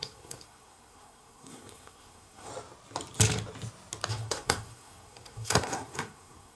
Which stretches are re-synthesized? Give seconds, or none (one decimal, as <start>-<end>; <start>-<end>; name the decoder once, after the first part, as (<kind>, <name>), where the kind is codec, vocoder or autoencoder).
0.0-2.5 (codec, SNAC); 4.1-6.6